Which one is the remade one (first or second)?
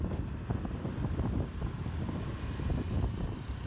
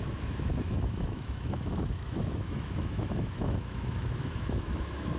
second